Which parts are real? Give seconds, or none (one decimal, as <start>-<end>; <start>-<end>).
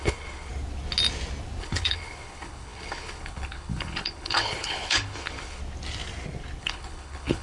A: 0.5-1.6; 5.6-6.6